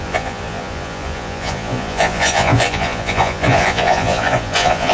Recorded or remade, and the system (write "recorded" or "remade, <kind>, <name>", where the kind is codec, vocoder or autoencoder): remade, vocoder, Vocos